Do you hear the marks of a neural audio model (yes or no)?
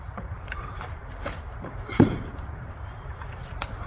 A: yes